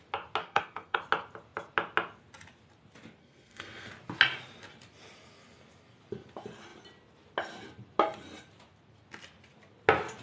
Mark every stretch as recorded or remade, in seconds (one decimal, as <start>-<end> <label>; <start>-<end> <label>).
0.0-0.4 recorded; 0.4-1.0 remade; 1.0-3.2 recorded; 3.2-3.9 remade; 3.9-10.2 recorded